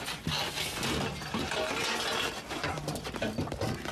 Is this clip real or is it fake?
real